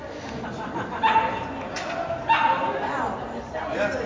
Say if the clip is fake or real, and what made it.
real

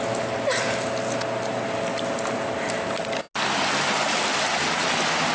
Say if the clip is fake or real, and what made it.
real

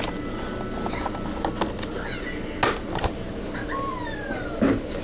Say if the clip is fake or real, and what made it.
real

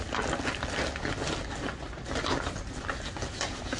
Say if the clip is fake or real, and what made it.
real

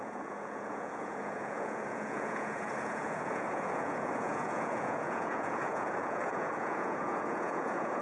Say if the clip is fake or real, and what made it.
fake, vocoder, Vocos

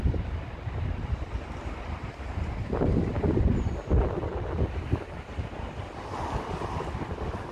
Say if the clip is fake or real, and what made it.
real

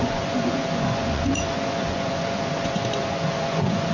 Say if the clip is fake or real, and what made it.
fake, vocoder, Vocos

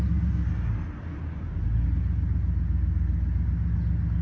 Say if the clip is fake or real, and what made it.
real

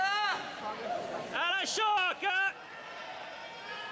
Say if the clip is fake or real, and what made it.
real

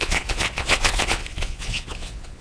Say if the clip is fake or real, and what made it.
fake, vocoder, Vocos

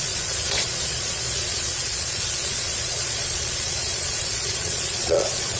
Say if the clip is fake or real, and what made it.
fake, vocoder, Vocos